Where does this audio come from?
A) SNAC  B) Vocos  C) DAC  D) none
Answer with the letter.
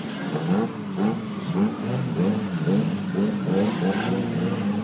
D